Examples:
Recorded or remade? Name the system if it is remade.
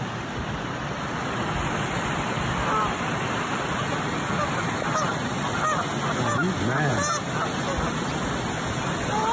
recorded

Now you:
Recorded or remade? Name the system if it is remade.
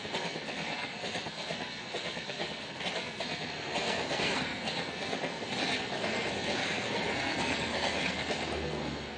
remade, codec, SNAC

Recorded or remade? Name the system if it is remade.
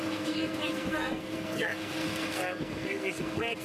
remade, codec, SNAC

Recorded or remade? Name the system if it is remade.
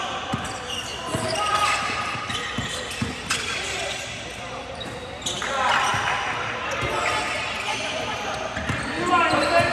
recorded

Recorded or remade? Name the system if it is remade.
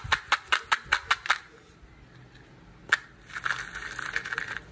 recorded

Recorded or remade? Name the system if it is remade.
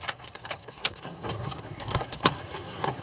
remade, codec, SNAC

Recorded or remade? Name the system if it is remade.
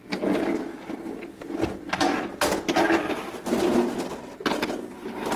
recorded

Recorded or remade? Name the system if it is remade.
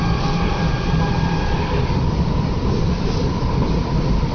remade, vocoder, BigVGAN v2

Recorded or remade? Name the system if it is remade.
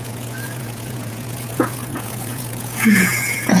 remade, vocoder, Vocos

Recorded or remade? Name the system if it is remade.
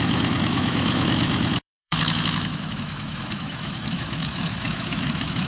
remade, autoencoder, DAC-VAE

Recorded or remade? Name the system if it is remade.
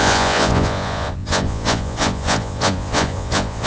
remade, vocoder, Vocos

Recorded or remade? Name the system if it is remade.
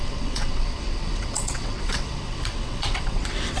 remade, vocoder, WaveNeXt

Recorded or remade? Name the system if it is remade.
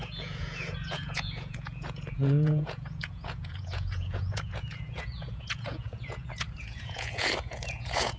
remade, vocoder, Vocos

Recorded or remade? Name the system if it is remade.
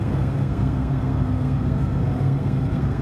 remade, codec, SNAC